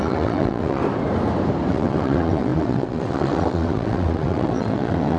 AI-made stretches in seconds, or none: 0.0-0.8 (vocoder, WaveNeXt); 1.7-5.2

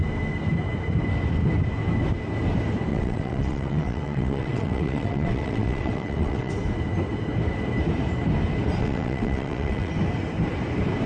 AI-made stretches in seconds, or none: 2.9-6.5 (vocoder, WaveNeXt); 8.8-9.9

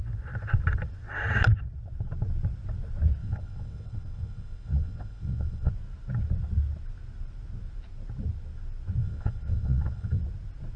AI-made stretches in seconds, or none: 3.2-5.7 (vocoder, WaveNeXt); 9.0-10.2